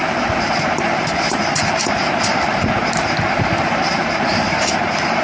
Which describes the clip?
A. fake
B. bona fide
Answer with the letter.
A